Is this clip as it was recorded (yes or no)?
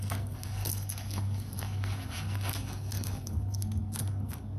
no